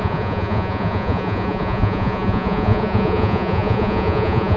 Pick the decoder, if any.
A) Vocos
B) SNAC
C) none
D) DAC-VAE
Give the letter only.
A